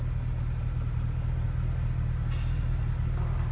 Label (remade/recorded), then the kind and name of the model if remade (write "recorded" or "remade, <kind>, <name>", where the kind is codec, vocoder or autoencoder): recorded